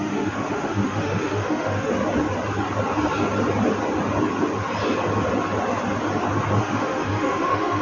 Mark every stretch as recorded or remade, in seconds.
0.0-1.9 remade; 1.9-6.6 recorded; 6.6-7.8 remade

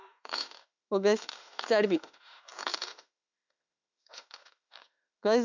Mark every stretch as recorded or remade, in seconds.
0.0-5.4 remade

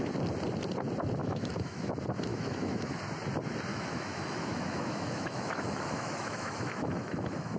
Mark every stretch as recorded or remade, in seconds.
0.0-1.2 recorded; 1.2-1.9 remade; 1.9-2.3 recorded; 2.3-3.0 remade; 3.0-3.7 recorded; 3.7-7.6 remade

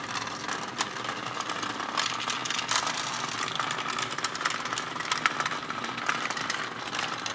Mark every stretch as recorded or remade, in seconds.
0.0-7.3 recorded

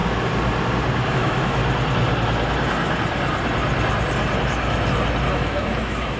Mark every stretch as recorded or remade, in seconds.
0.0-1.1 recorded; 1.1-1.6 remade; 1.6-5.3 recorded; 5.3-6.2 remade

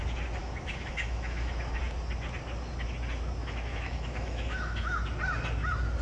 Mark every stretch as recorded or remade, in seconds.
0.0-0.4 recorded; 0.4-1.8 remade; 1.8-3.4 recorded; 3.4-5.0 remade; 5.0-6.0 recorded

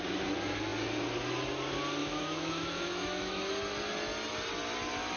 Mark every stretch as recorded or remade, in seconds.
0.0-2.0 recorded; 2.0-3.5 remade; 3.5-5.2 recorded

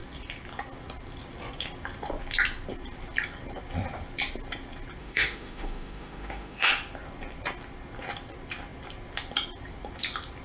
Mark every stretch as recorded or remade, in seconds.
0.0-5.0 recorded; 5.0-6.7 remade; 6.7-10.4 recorded